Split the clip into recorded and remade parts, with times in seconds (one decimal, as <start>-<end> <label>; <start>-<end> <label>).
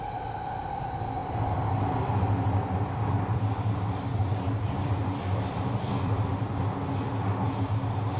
0.0-2.6 recorded; 2.6-6.6 remade; 6.6-8.2 recorded